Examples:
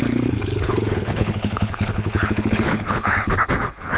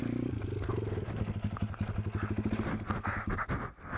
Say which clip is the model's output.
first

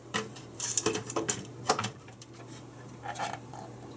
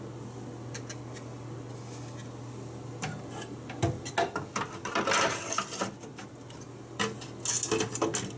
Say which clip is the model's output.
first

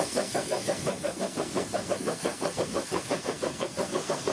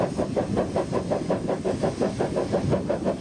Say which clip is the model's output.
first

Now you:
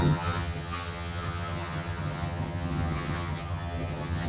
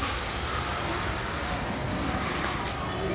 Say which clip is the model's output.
first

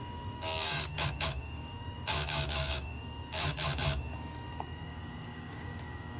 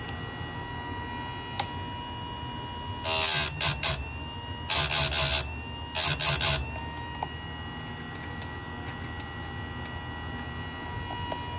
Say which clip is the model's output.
first